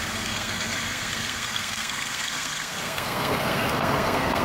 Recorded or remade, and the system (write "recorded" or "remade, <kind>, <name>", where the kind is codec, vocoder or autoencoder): remade, codec, SNAC